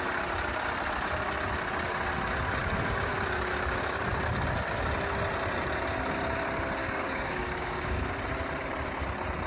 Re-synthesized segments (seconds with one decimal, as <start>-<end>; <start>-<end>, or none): 2.6-3.1; 6.8-8.1